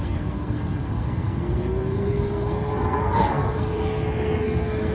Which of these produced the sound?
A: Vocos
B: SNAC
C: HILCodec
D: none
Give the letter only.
B